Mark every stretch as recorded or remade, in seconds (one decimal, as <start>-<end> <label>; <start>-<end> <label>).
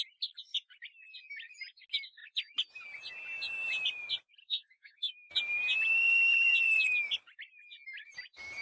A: 0.0-4.4 recorded; 4.4-5.3 remade; 5.3-8.6 recorded